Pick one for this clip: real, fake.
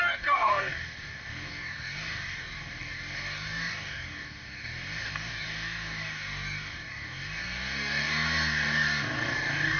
fake